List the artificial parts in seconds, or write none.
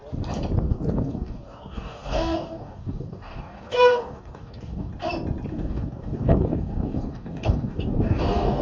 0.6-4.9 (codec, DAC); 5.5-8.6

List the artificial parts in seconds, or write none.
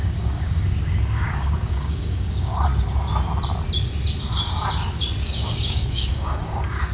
0.0-2.7 (codec, DAC); 5.2-6.9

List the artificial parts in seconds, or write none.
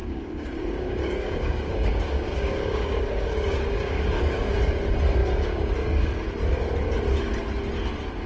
0.0-4.6 (codec, DAC); 5.2-6.2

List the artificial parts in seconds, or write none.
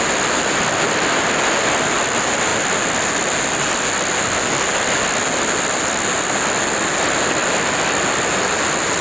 none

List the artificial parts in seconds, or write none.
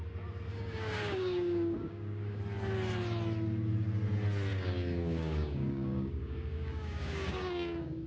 0.5-2.4 (codec, DAC); 4.5-8.1